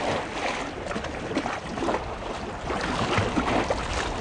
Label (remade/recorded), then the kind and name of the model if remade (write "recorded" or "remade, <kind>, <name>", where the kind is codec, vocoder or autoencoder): recorded